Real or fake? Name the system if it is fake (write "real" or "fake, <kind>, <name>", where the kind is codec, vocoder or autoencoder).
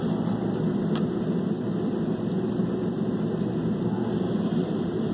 real